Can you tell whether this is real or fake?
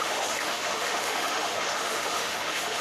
fake